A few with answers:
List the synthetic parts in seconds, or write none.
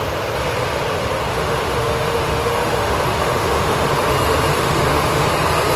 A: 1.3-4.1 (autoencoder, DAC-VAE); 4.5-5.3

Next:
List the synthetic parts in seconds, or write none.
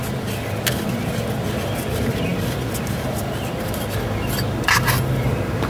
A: none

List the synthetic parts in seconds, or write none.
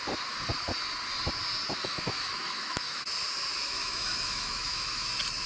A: 1.8-3.0 (autoencoder, DAC-VAE); 3.6-5.1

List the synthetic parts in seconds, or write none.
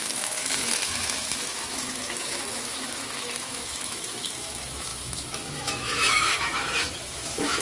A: 0.0-7.6 (autoencoder, DAC-VAE)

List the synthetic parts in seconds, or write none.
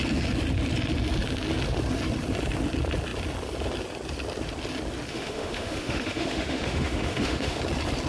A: 5.1-7.6 (autoencoder, DAC-VAE)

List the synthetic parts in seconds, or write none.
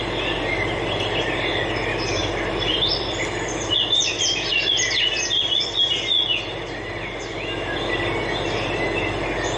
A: 2.2-4.5 (vocoder, BigVGAN v2)